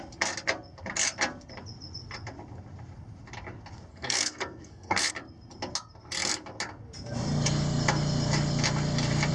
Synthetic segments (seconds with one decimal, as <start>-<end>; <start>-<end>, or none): 3.9-5.1